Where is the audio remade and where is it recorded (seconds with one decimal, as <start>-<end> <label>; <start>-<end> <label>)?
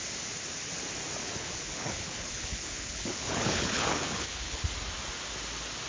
0.0-1.2 recorded; 1.2-4.7 remade; 4.7-5.9 recorded